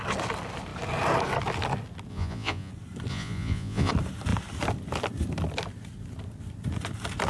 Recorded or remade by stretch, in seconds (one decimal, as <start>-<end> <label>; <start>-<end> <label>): 0.0-2.1 recorded; 2.1-2.7 remade; 2.7-3.1 recorded; 3.1-3.9 remade; 3.9-7.3 recorded